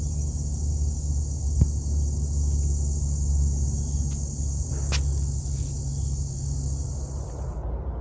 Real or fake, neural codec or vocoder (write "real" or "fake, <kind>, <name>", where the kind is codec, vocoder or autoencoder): real